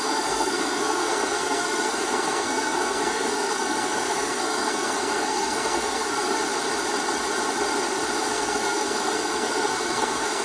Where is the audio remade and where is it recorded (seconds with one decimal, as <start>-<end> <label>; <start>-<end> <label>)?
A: 0.0-6.4 remade; 6.4-8.2 recorded; 8.2-10.4 remade